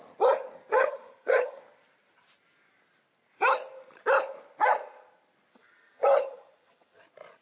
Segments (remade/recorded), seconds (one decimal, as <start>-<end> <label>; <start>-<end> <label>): 0.0-0.7 recorded; 0.7-1.6 remade; 1.6-5.5 recorded; 5.5-7.0 remade; 7.0-7.4 recorded

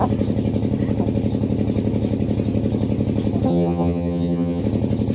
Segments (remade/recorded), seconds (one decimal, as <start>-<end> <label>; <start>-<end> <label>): 0.0-3.5 recorded; 3.5-4.6 remade; 4.6-5.1 recorded

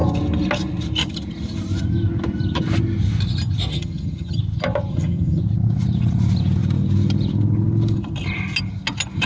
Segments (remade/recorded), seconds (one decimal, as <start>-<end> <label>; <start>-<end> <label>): 0.0-3.7 recorded; 3.7-4.4 remade; 4.4-4.9 recorded; 4.9-5.4 remade; 5.4-9.3 recorded

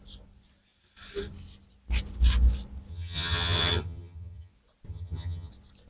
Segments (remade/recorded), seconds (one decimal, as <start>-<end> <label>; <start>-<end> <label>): 0.0-2.9 recorded; 2.9-4.5 remade; 4.5-4.9 recorded; 4.9-5.5 remade; 5.5-5.9 recorded

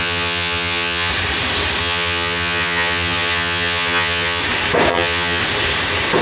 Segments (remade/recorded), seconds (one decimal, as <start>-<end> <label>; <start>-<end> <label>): 0.0-1.1 remade; 1.1-1.8 recorded; 1.8-4.4 remade; 4.4-4.9 recorded; 4.9-5.4 remade; 5.4-6.2 recorded

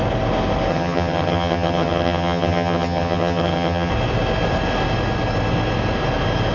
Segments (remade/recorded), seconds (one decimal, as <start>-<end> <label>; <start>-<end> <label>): 0.0-0.7 recorded; 0.7-3.9 remade; 3.9-6.5 recorded